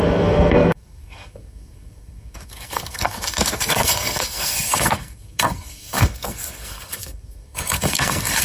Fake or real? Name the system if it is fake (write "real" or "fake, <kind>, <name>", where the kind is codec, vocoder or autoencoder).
fake, codec, SNAC